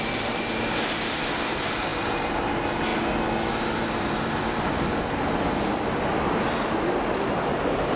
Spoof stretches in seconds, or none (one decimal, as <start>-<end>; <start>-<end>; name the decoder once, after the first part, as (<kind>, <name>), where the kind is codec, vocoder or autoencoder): none